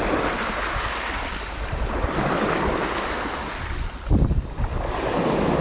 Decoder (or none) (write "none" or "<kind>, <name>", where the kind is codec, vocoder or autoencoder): none